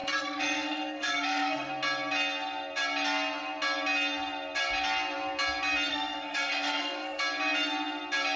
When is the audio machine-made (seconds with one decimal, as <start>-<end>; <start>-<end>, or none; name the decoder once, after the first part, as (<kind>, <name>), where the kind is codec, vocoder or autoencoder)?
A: 0.0-1.7 (codec, SNAC); 5.9-7.2